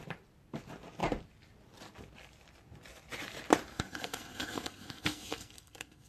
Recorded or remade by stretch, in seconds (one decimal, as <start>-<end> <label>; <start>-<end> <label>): 0.0-3.7 recorded; 3.7-6.1 remade